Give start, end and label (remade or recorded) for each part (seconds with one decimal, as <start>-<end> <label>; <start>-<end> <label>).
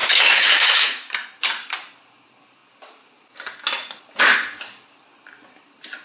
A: 0.0-1.1 remade; 1.1-6.0 recorded